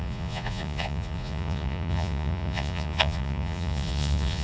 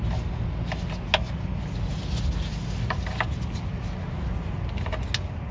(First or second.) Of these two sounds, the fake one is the first